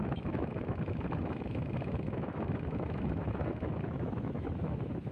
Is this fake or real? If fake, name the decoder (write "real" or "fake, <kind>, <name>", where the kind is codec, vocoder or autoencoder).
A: fake, autoencoder, DAC-VAE